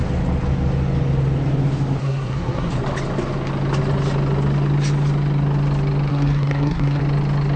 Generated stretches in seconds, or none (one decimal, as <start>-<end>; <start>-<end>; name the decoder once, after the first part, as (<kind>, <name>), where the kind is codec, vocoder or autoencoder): 2.0-2.7 (codec, SNAC); 6.1-7.0